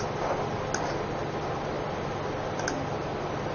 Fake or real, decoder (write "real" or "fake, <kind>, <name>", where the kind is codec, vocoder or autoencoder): real